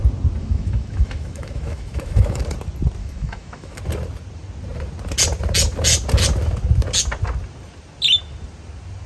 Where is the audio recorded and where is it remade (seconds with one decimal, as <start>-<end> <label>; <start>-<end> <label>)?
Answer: 0.0-0.4 recorded; 0.4-2.4 remade; 2.4-3.0 recorded; 3.0-3.8 remade; 3.8-9.1 recorded